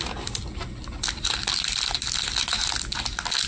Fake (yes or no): no